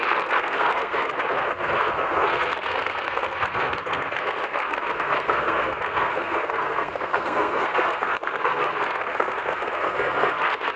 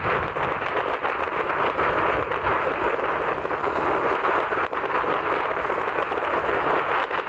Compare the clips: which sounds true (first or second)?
second